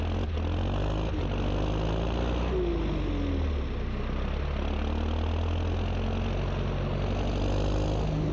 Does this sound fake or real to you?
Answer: real